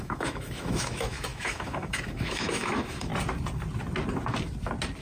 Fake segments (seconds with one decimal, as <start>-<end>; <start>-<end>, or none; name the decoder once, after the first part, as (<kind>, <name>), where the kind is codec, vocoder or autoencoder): 0.0-3.1 (autoencoder, DAC-VAE)